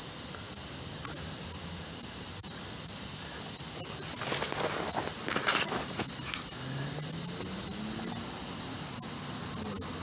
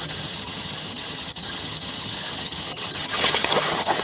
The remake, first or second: second